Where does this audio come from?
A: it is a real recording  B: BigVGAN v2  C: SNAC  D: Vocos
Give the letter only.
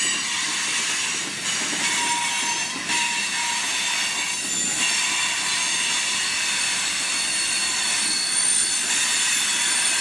A